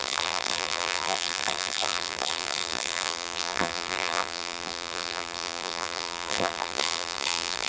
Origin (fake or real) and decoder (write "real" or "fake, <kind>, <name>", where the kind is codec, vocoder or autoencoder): fake, vocoder, BigVGAN v2